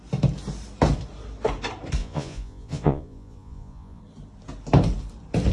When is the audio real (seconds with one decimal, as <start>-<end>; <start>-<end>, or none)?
0.0-2.0; 4.0-5.5